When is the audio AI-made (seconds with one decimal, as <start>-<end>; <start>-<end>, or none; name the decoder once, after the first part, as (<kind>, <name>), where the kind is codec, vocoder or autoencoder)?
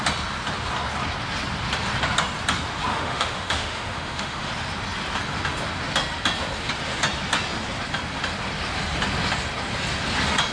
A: 2.9-4.5 (autoencoder, DAC-VAE)